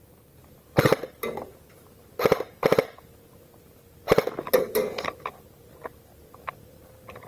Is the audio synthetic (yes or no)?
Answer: no